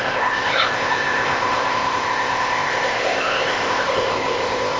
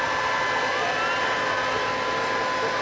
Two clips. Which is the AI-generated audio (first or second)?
first